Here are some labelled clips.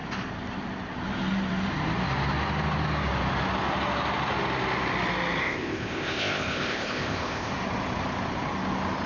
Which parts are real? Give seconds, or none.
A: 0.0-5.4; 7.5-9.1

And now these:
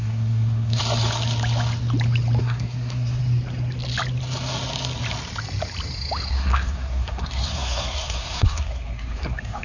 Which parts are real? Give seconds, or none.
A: 0.8-2.4; 3.2-6.3